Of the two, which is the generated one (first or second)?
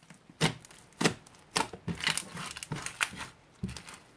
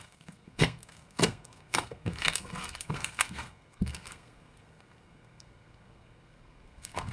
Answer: second